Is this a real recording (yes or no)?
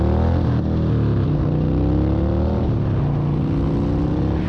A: yes